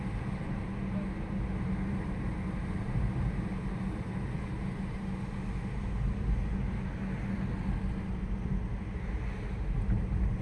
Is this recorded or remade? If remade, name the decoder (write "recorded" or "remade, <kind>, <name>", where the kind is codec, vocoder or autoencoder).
recorded